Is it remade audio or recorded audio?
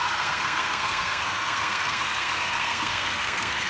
remade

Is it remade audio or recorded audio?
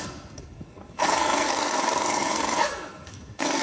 remade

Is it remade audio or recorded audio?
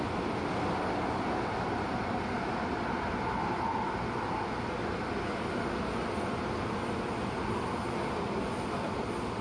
recorded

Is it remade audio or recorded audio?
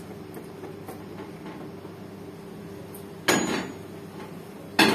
recorded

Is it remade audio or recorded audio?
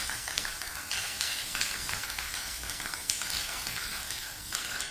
remade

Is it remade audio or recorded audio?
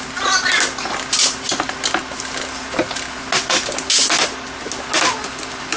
recorded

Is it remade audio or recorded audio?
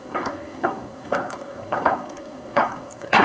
remade